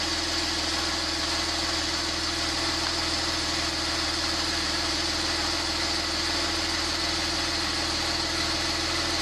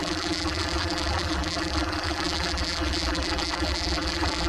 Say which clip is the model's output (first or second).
second